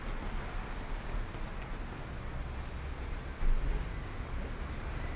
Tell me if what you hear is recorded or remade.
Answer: recorded